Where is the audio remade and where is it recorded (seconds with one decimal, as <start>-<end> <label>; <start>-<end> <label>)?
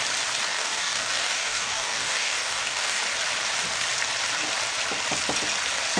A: 0.0-0.5 recorded; 0.5-3.0 remade; 3.0-6.0 recorded